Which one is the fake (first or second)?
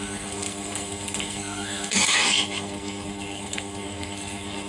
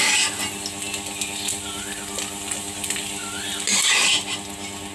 first